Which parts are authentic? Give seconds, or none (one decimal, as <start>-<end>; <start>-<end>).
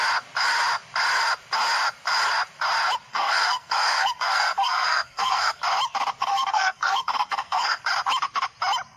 0.0-3.1; 5.6-6.2; 7.8-9.0